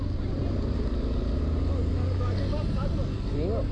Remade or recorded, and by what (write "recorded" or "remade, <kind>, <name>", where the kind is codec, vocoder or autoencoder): recorded